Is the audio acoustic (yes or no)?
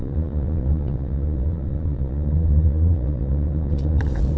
no